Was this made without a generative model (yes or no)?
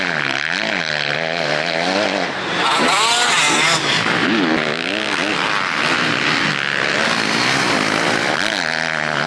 yes